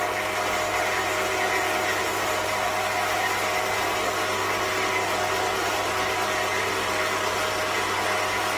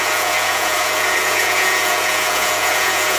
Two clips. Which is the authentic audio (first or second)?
first